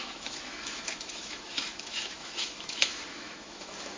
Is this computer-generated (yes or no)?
yes